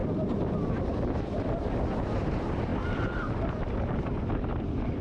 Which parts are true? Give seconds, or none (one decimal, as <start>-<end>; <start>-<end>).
0.7-5.0